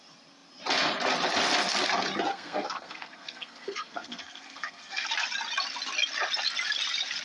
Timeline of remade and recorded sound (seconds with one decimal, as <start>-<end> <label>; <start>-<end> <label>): 0.0-2.3 recorded; 2.3-5.1 remade; 5.1-7.2 recorded